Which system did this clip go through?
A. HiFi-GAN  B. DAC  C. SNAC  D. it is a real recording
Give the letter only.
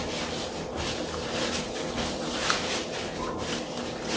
D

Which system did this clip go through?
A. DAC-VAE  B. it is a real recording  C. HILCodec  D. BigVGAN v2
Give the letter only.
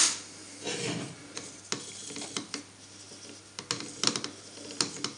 B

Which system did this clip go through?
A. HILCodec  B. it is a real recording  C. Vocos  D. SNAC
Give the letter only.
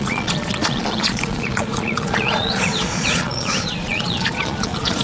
C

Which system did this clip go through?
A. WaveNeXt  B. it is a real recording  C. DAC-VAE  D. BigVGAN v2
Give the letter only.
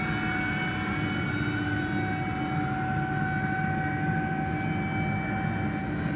B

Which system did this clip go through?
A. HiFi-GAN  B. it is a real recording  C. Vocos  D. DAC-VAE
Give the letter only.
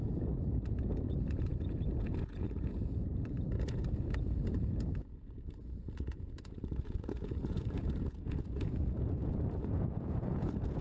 C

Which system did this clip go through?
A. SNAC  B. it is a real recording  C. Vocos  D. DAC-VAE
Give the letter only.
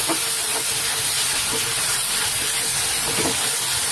B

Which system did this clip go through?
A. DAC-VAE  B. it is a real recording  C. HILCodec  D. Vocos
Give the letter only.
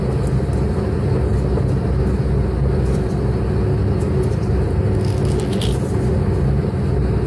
B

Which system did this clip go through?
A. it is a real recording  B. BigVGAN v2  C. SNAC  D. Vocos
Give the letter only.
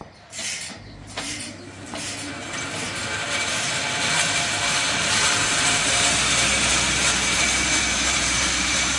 B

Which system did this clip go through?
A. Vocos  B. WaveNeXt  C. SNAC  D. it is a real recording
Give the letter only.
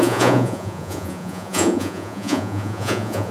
A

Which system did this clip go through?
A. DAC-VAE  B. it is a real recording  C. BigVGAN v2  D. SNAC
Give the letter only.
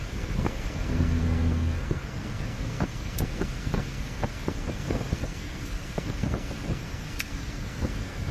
D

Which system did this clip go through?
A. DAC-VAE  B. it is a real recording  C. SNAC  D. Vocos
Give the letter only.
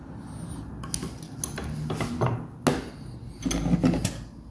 B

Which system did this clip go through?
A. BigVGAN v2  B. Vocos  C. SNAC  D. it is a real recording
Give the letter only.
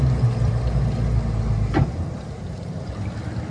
D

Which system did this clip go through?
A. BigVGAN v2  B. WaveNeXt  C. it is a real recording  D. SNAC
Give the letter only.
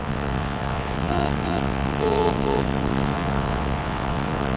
B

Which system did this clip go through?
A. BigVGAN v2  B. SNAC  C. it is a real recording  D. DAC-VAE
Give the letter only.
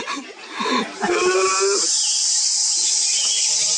C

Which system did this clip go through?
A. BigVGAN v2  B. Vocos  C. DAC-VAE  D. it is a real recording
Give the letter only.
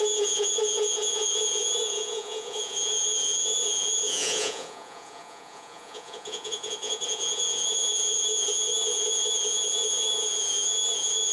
B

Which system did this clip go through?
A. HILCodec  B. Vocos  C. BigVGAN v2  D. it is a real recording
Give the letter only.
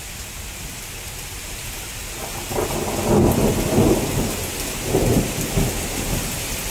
D